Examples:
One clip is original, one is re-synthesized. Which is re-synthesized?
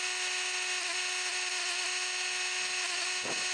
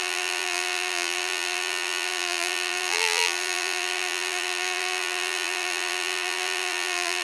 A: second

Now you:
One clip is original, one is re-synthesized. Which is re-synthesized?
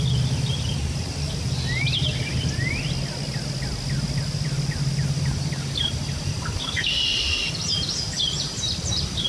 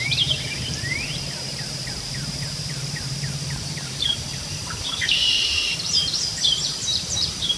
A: second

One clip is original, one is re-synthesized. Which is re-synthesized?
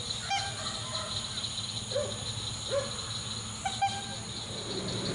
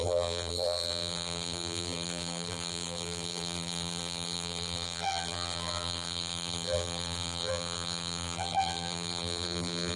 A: second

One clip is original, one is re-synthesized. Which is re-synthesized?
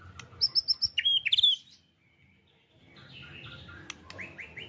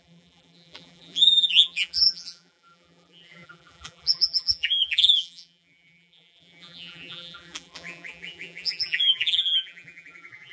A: second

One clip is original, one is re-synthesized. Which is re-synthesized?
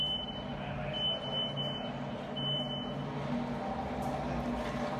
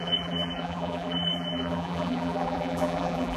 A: second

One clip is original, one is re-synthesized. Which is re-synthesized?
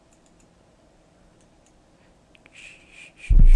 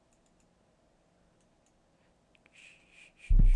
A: first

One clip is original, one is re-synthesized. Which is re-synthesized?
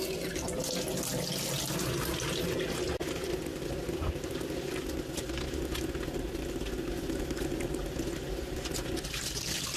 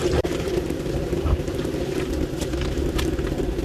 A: second